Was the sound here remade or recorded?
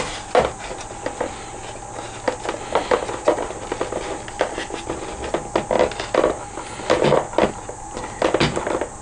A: recorded